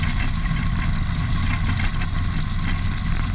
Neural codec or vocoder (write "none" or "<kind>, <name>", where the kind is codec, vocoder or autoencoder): none